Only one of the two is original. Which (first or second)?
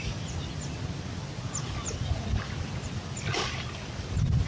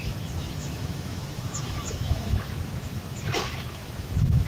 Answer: first